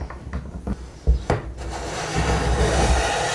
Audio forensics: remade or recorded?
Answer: recorded